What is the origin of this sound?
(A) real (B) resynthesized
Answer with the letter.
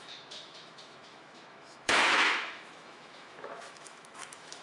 B